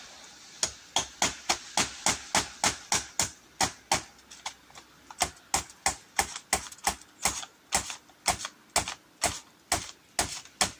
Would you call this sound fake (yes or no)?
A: no